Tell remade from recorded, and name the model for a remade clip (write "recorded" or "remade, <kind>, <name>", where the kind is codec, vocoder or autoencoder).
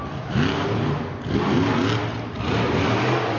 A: recorded